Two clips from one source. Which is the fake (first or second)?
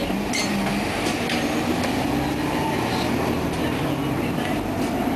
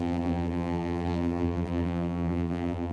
second